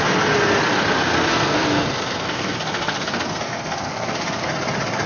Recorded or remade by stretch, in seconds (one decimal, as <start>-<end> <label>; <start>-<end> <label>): 0.0-1.3 recorded; 1.3-4.4 remade; 4.4-5.1 recorded